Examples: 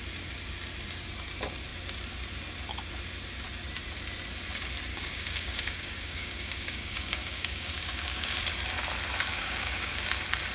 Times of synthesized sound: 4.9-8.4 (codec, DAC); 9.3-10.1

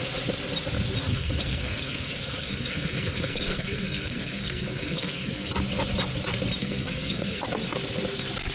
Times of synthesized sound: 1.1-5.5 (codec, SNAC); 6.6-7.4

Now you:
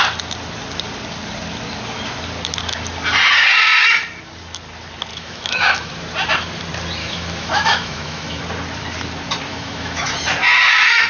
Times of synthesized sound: 5.1-5.9 (autoencoder, DAC-VAE); 7.0-8.4; 9.5-10.1

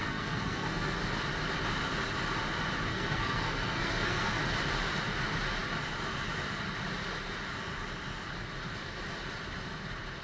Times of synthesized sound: 0.0-1.0 (codec, SNAC); 2.9-4.4

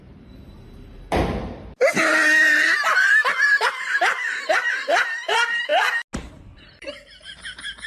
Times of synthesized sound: 0.0-1.2 (vocoder, BigVGAN v2); 2.9-5.7; 6.4-7.9

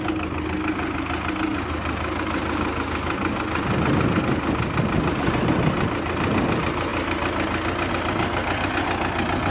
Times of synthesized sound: none